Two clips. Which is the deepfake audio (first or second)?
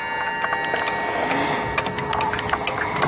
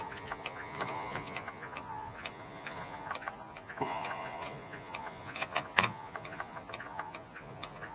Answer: second